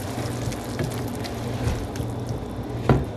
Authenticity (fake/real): real